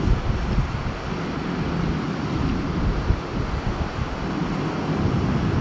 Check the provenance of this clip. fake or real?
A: real